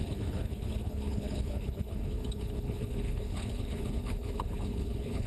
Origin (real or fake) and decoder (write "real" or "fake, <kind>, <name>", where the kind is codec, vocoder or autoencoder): fake, codec, HILCodec